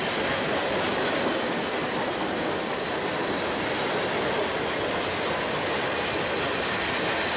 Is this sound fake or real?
real